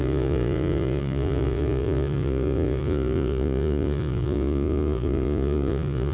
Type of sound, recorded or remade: remade